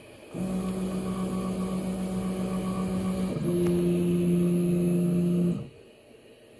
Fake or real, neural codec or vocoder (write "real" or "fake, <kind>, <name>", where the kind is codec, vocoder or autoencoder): real